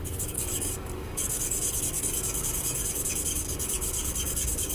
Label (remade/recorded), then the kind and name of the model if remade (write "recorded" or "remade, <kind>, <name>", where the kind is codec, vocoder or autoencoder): remade, codec, DAC